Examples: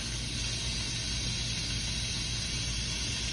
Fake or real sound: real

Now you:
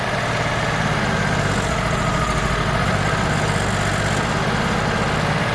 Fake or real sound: real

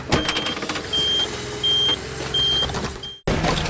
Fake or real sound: real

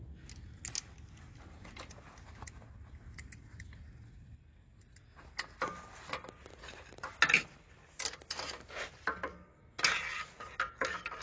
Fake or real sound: real